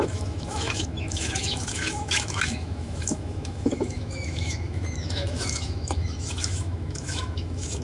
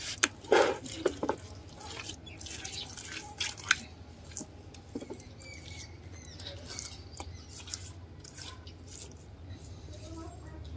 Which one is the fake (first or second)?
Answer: first